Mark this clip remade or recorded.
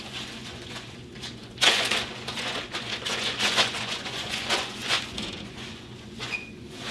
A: remade